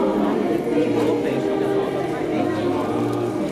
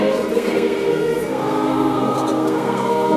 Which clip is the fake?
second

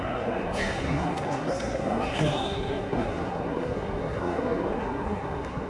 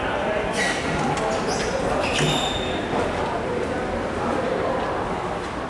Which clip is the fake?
first